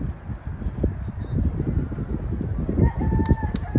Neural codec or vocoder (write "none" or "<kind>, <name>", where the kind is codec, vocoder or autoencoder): none